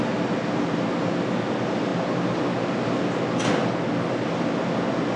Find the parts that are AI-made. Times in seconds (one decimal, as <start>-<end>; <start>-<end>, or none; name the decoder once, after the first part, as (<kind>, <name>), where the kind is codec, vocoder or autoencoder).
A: none